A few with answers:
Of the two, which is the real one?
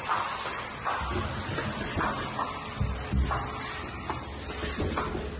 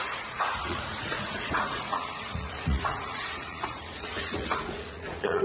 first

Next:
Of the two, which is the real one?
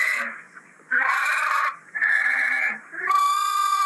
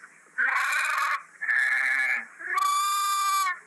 second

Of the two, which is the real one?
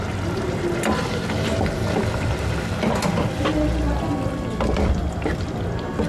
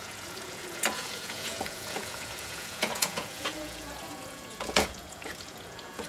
first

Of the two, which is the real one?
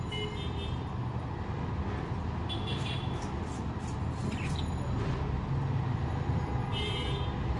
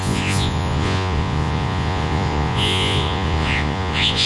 first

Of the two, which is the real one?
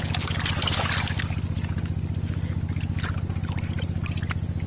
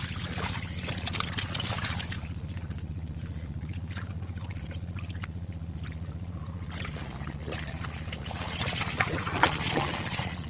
first